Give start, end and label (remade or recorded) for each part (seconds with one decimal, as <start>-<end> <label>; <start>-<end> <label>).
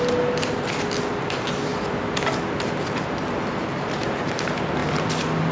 0.0-5.5 recorded